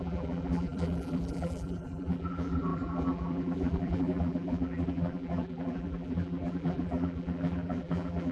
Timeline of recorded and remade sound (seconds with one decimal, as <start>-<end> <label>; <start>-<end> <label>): 0.0-8.3 remade